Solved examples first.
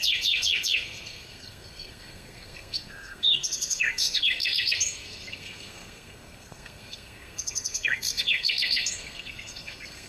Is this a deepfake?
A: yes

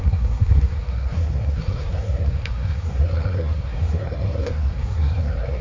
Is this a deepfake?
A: yes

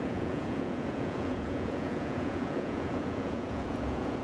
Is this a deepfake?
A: yes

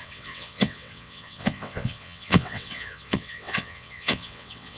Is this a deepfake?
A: yes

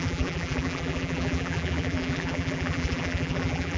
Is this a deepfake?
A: yes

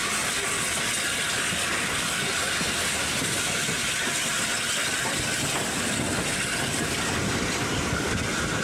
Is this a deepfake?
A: no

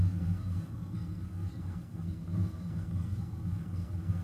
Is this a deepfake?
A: yes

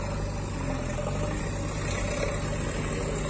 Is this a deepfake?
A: no